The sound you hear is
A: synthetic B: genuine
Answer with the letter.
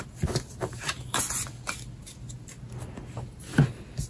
B